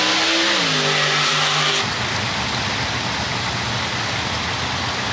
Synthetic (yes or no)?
no